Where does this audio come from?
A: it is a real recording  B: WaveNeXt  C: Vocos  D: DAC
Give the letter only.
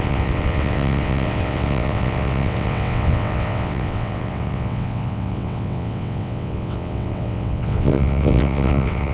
B